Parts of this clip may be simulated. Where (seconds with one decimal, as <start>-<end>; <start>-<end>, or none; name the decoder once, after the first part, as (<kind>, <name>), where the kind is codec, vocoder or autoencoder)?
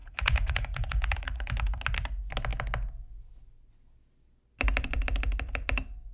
0.0-1.5 (vocoder, Vocos)